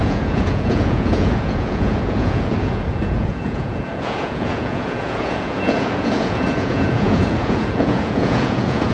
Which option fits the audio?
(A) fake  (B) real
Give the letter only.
A